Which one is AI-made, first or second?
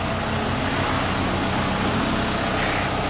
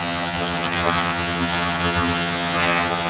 second